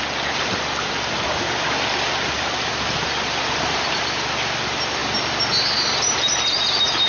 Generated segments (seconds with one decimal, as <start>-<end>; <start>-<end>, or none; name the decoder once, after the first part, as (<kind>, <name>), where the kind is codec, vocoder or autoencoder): none